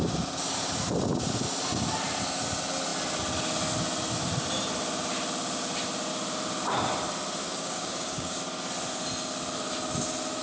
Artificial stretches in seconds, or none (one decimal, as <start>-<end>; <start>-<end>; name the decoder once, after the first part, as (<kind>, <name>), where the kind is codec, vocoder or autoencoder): 7.4-8.4 (codec, DAC)